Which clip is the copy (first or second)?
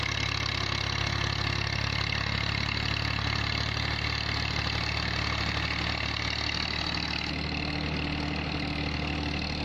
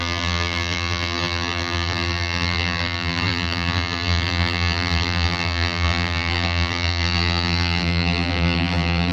second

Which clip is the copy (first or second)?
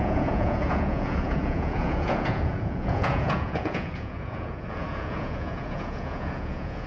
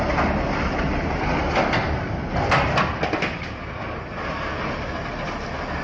first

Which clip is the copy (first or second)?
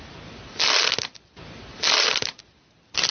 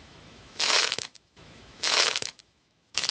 second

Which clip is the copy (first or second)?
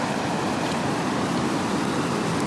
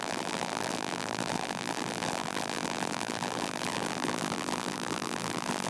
second